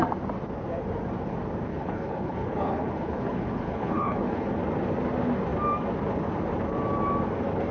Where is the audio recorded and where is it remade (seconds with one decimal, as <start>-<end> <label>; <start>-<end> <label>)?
0.0-1.7 recorded; 1.7-4.6 remade; 4.6-7.7 recorded